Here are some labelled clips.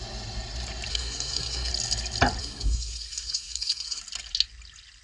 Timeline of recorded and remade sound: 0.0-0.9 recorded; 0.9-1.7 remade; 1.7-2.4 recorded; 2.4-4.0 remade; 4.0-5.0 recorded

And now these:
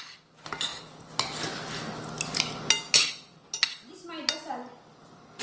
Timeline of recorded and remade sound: 0.0-5.4 recorded